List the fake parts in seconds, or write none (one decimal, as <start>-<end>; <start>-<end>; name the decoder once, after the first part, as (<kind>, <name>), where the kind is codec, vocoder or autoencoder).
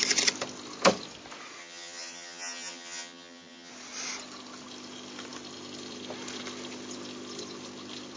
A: 1.6-3.7 (vocoder, HiFi-GAN)